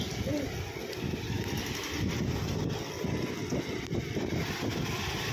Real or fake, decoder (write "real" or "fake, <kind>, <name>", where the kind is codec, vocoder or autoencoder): real